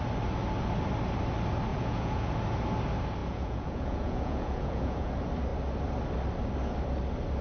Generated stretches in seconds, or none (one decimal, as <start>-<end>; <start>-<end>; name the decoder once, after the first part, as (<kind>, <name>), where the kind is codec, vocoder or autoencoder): 1.7-2.3 (vocoder, Vocos); 3.2-5.1